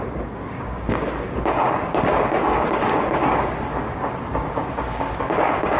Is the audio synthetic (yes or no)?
yes